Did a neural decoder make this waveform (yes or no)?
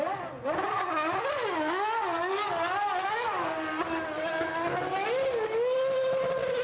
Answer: no